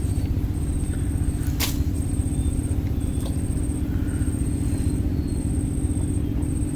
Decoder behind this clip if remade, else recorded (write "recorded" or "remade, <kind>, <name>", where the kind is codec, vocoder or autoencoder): recorded